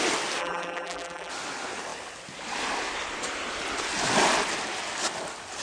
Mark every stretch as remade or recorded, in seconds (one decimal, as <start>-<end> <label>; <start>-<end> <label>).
0.0-0.4 recorded; 0.4-1.3 remade; 1.3-5.6 recorded

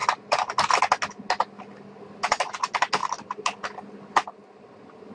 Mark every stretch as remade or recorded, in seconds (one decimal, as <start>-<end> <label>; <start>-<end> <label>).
0.0-0.8 remade; 0.8-3.0 recorded; 3.0-3.6 remade; 3.6-5.1 recorded

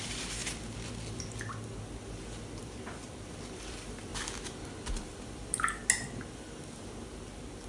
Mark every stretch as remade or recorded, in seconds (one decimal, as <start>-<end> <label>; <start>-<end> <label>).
0.0-0.4 remade; 0.4-2.6 recorded; 2.6-4.1 remade; 4.1-4.9 recorded; 4.9-5.8 remade; 5.8-6.6 recorded; 6.6-7.7 remade

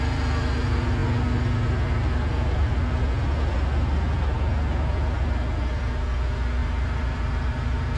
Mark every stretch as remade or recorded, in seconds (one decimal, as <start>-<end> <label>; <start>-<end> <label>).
0.0-6.6 recorded; 6.6-8.0 remade

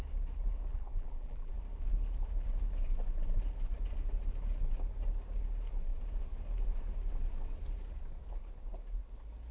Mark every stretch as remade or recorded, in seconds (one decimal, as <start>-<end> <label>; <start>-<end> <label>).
0.0-0.7 recorded; 0.7-1.5 remade; 1.5-9.5 recorded

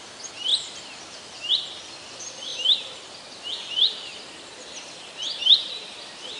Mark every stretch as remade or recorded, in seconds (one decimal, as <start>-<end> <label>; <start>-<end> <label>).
0.0-0.5 recorded; 0.5-1.5 remade; 1.5-6.4 recorded

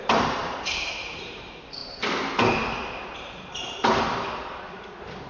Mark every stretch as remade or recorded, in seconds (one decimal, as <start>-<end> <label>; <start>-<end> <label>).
0.0-5.3 remade